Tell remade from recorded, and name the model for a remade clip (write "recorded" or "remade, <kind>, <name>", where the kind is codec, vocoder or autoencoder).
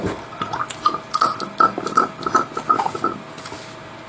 recorded